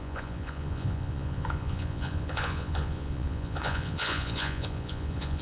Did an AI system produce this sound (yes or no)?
yes